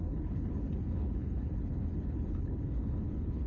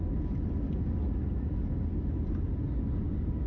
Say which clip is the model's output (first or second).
first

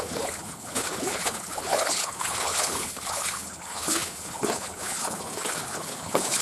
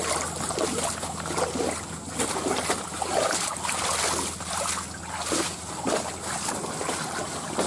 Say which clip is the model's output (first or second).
first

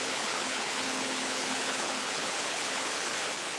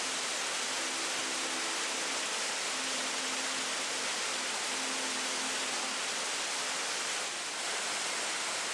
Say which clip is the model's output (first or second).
first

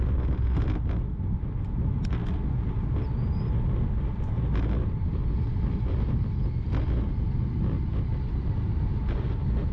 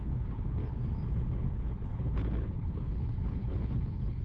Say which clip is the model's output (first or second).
second